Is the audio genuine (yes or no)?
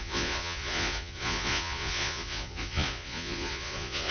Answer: no